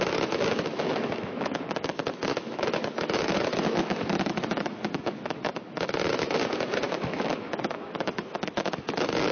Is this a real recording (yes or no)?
no